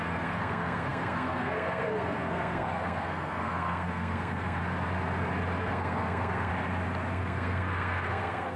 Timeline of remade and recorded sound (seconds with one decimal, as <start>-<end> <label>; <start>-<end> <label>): 0.0-4.6 remade; 4.6-5.6 recorded; 5.6-6.5 remade; 6.5-7.1 recorded; 7.1-8.6 remade